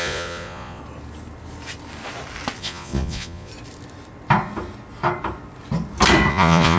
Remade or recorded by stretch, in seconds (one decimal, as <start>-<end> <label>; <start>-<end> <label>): 0.0-0.8 remade; 0.8-2.6 recorded; 2.6-3.5 remade; 3.5-6.3 recorded; 6.3-6.8 remade